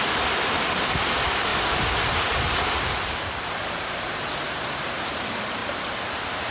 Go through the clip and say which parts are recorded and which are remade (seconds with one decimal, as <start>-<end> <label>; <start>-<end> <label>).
0.0-1.5 recorded; 1.5-5.1 remade; 5.1-5.6 recorded; 5.6-6.5 remade